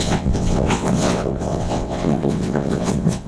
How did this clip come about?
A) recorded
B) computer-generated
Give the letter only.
B